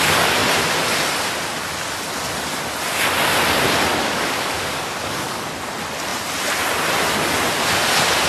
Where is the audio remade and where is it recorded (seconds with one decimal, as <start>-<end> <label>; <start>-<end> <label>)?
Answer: 0.0-3.9 recorded; 3.9-5.4 remade; 5.4-8.3 recorded